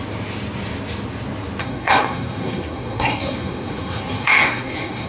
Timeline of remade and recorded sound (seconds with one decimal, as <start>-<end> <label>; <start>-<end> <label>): 0.0-1.6 recorded; 1.6-5.1 remade